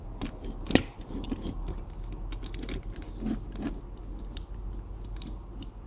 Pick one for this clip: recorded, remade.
recorded